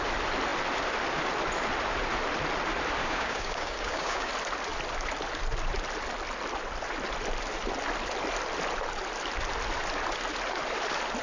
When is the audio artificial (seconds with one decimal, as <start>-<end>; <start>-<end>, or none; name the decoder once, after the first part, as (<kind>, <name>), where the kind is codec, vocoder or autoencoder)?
3.0-4.3 (codec, DAC)